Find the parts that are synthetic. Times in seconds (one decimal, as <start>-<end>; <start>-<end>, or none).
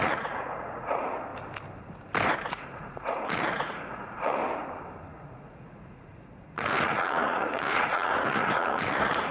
0.0-1.3; 2.5-4.4; 5.1-9.3